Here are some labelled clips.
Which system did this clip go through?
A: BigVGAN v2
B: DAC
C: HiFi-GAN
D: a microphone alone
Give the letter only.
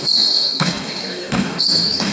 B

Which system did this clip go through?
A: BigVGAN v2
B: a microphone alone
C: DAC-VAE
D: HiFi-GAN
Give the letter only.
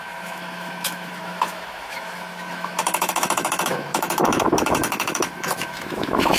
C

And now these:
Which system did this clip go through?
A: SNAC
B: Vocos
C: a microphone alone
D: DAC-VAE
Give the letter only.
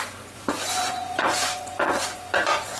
B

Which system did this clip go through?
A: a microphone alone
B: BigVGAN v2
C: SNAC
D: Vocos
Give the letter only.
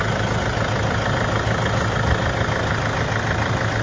A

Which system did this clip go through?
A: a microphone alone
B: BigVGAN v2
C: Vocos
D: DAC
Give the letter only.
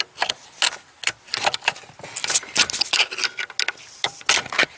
A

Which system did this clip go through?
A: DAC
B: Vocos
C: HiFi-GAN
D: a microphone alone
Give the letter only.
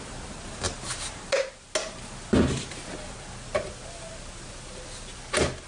D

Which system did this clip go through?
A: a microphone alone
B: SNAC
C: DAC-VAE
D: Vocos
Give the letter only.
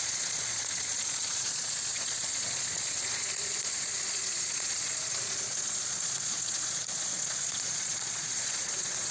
D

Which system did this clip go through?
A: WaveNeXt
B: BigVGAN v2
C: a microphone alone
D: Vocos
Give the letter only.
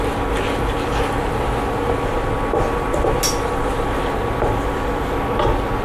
C